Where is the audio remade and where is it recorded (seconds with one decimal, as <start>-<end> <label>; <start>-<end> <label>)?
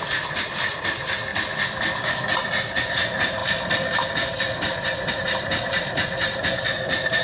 0.0-1.3 remade; 1.3-2.8 recorded; 2.8-3.4 remade; 3.4-5.1 recorded; 5.1-7.2 remade